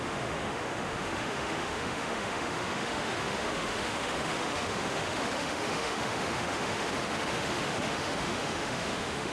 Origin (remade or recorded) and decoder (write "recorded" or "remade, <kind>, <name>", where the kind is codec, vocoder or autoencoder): remade, autoencoder, DAC-VAE